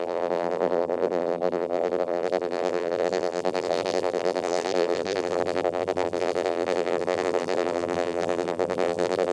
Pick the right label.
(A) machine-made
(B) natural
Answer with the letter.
A